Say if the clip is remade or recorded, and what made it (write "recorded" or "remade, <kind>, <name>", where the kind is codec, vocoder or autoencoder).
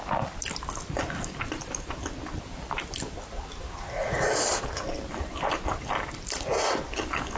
recorded